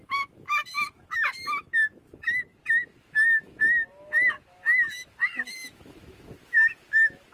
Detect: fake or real fake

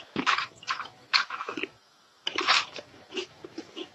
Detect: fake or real fake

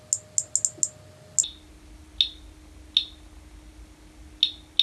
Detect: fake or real real